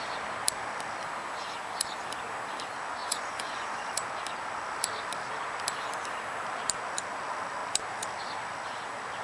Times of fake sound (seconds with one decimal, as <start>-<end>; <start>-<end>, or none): 3.0-3.9